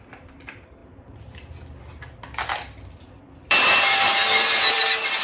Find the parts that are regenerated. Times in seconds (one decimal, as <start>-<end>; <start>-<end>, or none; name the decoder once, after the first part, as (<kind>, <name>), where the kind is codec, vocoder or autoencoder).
0.0-0.8 (vocoder, BigVGAN v2); 3.1-5.2